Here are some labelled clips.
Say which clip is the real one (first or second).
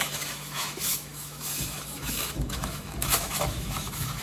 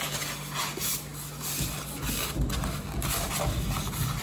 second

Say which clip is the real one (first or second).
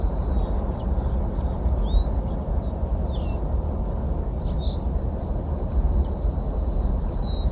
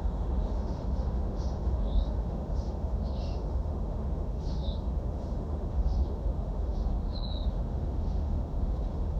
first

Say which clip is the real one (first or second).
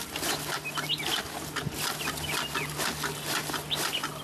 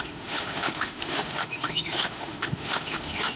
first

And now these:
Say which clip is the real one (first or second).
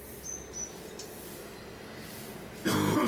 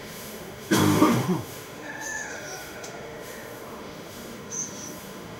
first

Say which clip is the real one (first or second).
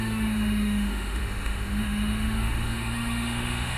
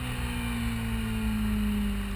second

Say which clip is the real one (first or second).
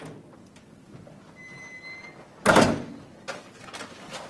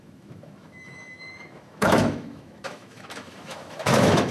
first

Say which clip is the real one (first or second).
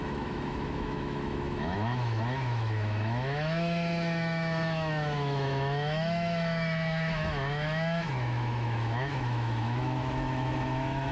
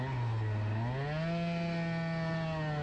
second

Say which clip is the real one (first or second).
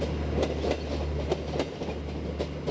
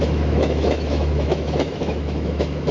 first